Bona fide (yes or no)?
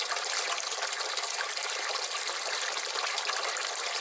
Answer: yes